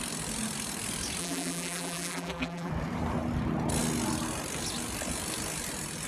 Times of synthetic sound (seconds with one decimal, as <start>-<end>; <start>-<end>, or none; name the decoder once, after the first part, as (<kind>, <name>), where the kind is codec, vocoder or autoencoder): 1.2-2.7 (vocoder, BigVGAN v2)